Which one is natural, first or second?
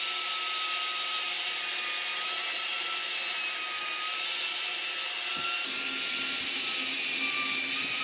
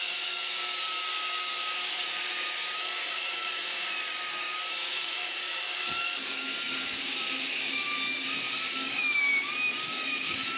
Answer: first